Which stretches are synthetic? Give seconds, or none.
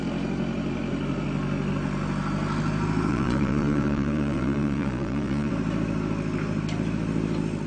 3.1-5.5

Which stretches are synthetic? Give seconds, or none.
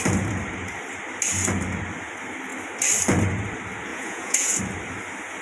3.9-4.6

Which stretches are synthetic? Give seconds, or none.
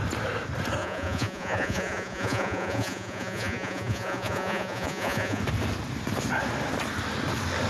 0.8-5.4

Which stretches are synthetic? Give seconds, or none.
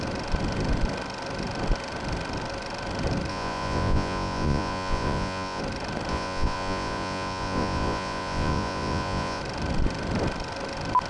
3.3-5.6; 6.1-9.4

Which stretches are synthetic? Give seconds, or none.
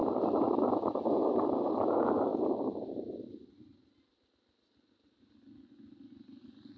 none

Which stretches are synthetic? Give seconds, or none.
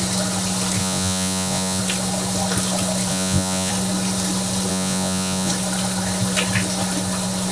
0.8-1.8; 3.1-3.7; 4.7-5.5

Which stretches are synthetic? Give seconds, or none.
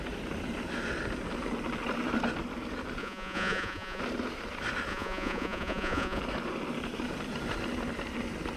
3.0-4.0; 4.9-6.2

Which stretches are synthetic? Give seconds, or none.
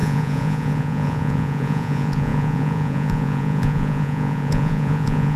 0.0-5.4